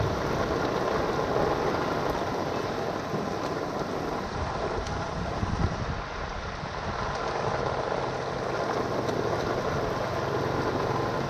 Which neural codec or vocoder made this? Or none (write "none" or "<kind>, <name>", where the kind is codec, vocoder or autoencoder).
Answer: none